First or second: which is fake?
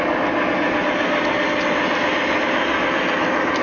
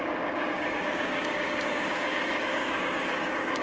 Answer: second